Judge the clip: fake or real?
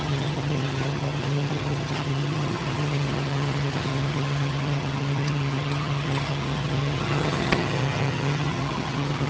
fake